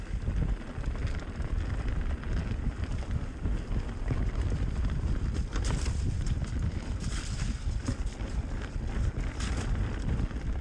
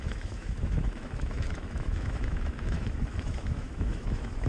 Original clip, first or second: first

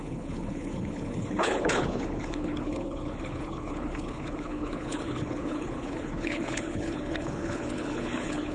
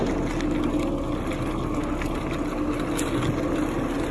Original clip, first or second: second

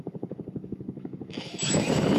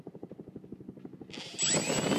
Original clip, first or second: second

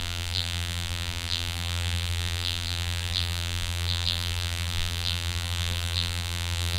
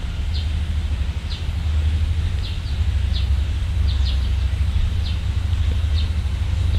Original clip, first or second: second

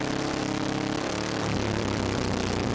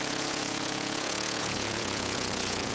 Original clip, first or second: first